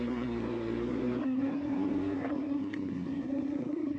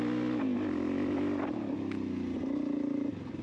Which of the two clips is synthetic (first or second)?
first